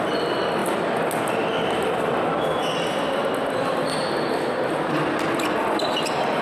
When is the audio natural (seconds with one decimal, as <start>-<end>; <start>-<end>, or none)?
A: 0.0-6.4